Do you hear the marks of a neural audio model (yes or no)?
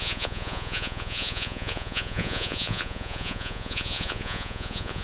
yes